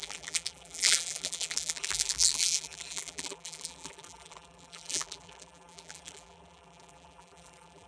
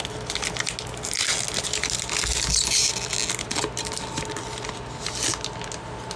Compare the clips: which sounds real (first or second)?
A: second